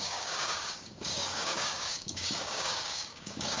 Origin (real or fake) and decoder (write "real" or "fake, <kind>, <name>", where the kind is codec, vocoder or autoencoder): fake, codec, DAC